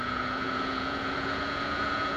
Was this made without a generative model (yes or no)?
no